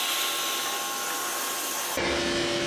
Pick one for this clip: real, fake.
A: real